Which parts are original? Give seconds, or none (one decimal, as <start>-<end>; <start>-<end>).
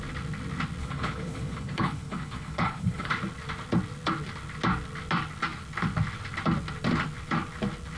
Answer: 0.0-0.8; 3.1-8.0